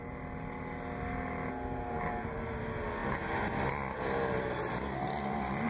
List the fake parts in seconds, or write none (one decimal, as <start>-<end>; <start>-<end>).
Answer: none